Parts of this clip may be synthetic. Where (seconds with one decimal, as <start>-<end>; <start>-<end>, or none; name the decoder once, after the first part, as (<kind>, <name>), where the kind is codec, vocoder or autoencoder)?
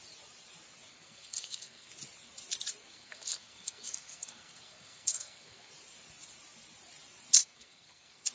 0.9-1.9 (codec, SNAC); 2.8-5.7; 7.4-8.3